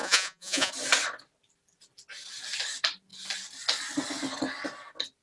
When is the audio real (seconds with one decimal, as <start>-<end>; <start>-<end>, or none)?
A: 0.7-5.2